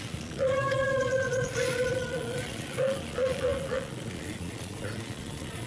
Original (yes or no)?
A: no